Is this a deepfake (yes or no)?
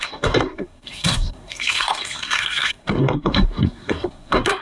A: yes